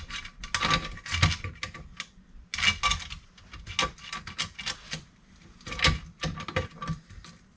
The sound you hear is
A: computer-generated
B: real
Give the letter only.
B